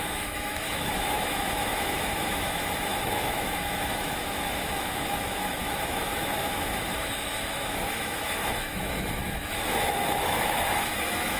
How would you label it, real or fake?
fake